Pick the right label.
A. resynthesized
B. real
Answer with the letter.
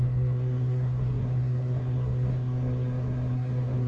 A